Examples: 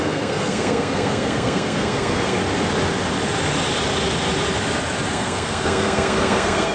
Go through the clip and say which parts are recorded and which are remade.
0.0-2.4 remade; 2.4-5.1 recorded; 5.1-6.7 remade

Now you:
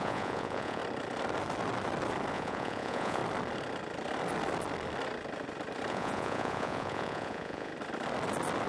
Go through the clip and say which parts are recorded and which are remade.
0.0-0.8 remade; 0.8-2.3 recorded; 2.3-3.2 remade; 3.2-5.9 recorded; 5.9-7.7 remade; 7.7-8.7 recorded

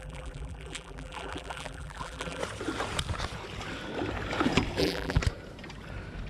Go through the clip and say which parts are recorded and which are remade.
0.0-2.4 remade; 2.4-4.8 recorded; 4.8-5.2 remade; 5.2-6.3 recorded

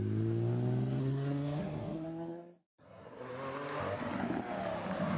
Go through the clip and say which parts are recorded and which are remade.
0.0-1.0 recorded; 1.0-3.3 remade; 3.3-5.2 recorded

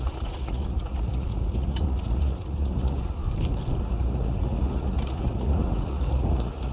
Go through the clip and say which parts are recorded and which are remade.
0.0-3.2 remade; 3.2-3.8 recorded; 3.8-6.7 remade

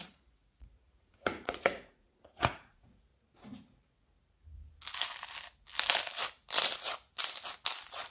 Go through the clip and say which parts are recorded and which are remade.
0.0-3.1 remade; 3.1-8.1 recorded

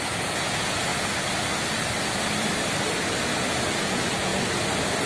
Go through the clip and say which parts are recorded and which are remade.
0.0-0.9 remade; 0.9-3.8 recorded; 3.8-4.3 remade; 4.3-5.1 recorded